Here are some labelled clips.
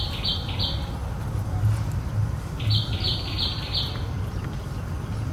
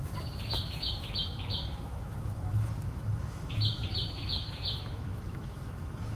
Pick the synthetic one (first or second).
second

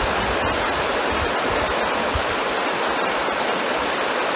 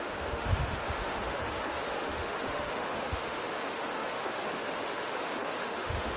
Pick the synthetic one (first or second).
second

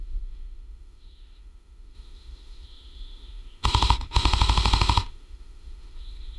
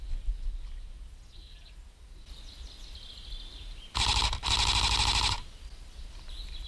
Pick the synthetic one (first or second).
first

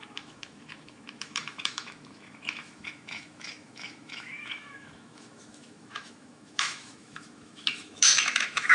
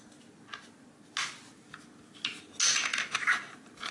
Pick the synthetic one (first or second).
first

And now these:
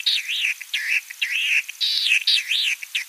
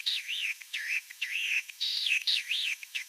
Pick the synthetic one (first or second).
second